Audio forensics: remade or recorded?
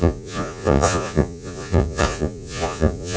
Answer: remade